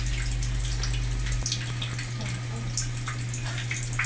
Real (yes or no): yes